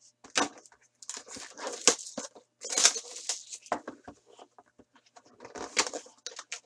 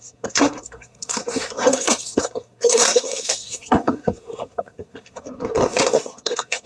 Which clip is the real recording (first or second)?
first